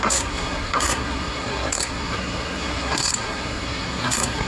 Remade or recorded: remade